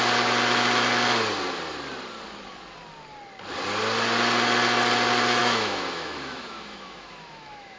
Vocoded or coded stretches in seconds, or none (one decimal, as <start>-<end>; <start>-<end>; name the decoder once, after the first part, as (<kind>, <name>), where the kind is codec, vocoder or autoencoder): 5.4-7.8 (autoencoder, DAC-VAE)